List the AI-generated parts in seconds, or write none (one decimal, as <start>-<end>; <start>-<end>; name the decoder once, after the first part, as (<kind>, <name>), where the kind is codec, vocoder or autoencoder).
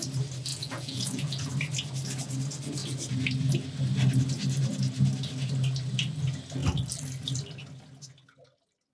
0.5-1.5 (vocoder, Vocos)